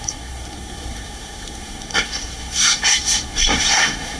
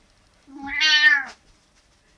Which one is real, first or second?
second